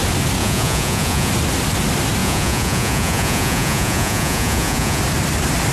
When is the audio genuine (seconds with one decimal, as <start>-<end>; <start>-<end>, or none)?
0.0-0.4; 1.3-2.2; 5.0-5.7